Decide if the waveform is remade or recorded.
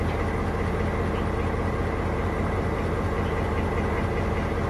recorded